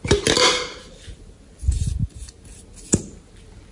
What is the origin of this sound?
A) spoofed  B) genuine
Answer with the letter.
B